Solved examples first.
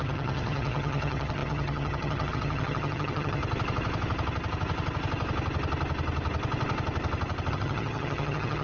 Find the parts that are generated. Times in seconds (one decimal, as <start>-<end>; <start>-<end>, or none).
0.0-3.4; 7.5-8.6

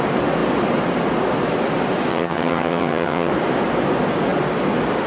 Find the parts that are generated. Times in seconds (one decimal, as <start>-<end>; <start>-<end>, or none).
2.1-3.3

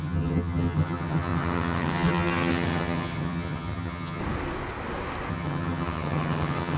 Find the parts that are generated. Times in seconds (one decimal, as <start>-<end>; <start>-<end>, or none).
0.0-4.2; 5.3-6.8

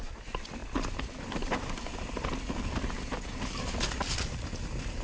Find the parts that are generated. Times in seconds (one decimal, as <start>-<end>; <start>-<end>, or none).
none

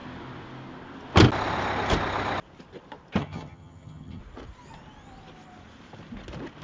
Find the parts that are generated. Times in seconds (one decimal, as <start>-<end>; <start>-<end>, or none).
3.2-4.2